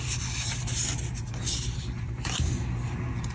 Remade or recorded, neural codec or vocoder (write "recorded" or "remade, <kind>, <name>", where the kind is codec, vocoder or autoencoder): recorded